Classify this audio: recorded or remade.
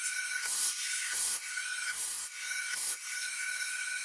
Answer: remade